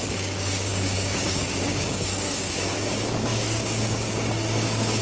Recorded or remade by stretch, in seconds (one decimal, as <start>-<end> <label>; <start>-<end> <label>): 0.0-5.0 remade